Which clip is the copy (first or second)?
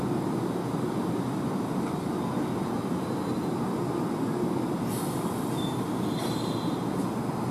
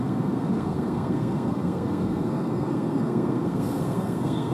second